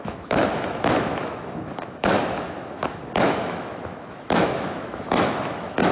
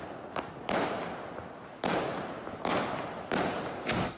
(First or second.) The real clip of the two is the second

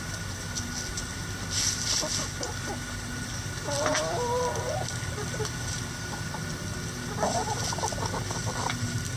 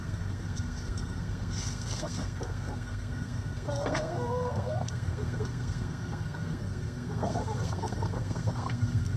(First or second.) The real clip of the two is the first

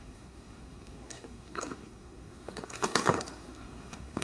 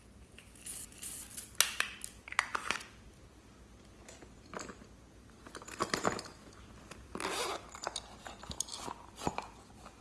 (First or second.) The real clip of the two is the second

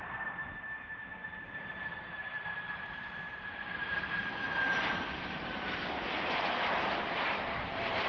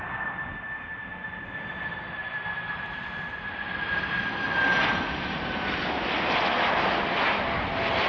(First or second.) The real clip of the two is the second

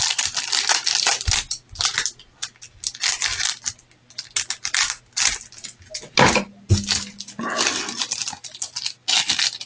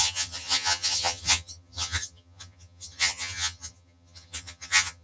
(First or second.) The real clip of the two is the first